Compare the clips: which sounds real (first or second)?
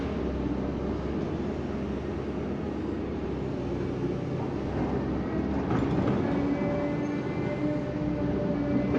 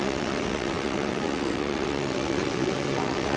first